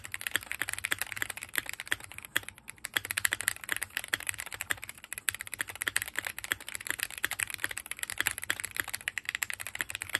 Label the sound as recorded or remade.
recorded